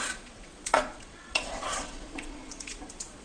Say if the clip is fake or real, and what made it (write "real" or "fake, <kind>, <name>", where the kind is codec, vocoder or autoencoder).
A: fake, vocoder, Vocos